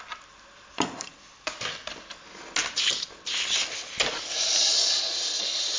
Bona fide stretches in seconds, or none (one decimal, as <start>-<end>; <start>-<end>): 0.0-5.8